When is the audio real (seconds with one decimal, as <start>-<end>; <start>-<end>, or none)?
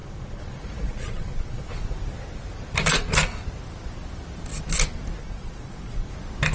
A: 1.7-5.2; 6.1-6.5